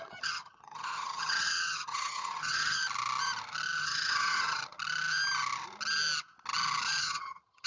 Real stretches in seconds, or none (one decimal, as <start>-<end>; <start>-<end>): 2.8-3.8; 4.6-7.0